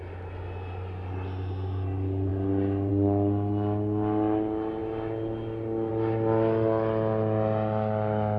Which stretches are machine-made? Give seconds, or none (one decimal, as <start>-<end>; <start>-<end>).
none